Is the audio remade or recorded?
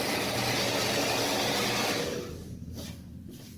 recorded